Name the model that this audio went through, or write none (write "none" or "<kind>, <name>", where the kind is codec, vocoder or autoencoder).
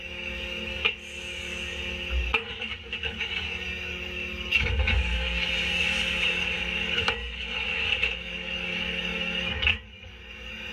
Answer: codec, DAC